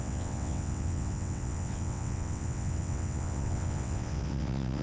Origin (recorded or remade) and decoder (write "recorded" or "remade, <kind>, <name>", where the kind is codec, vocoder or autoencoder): remade, vocoder, WaveNeXt